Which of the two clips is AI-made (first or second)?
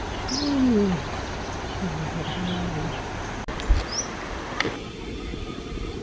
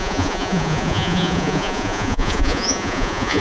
second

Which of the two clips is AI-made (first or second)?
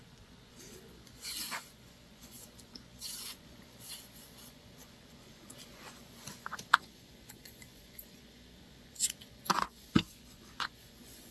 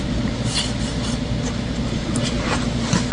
first